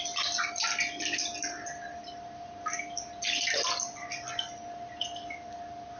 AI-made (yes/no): no